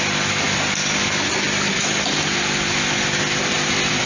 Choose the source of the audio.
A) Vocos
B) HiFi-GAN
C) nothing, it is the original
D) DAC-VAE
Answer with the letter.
C